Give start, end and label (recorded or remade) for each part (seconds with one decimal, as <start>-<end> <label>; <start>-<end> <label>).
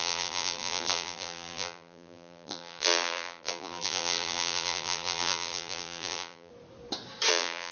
0.0-6.5 remade; 6.5-7.3 recorded; 7.3-7.7 remade